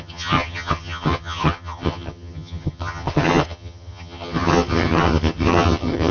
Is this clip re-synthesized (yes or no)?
yes